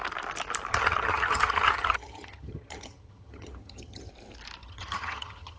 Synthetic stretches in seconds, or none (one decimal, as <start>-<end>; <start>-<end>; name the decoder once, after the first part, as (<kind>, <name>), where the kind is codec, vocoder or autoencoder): 0.7-4.1 (vocoder, HiFi-GAN); 4.6-5.6